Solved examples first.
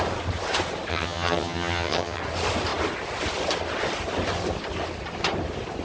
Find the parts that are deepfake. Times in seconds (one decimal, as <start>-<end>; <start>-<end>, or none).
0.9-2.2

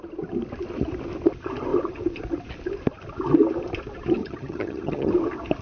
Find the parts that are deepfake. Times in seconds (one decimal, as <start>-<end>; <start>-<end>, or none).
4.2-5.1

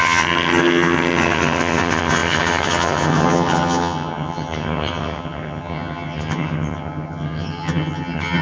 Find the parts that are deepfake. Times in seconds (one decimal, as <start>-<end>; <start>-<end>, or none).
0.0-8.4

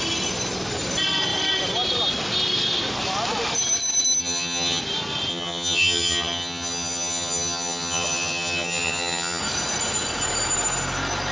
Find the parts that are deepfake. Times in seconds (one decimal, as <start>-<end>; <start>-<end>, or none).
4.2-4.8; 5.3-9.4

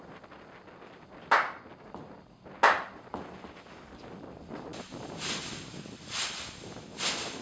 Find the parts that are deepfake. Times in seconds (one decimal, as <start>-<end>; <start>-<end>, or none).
none

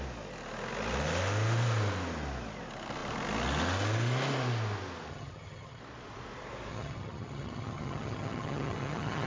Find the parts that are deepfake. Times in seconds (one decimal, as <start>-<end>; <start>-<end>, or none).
5.1-5.8; 6.7-9.3

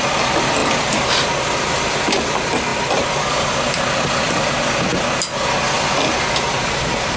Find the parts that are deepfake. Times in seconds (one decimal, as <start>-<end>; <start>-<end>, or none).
none

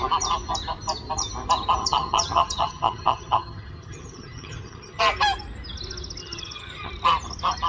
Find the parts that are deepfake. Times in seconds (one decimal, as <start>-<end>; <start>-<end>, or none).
1.8-5.0; 6.2-6.9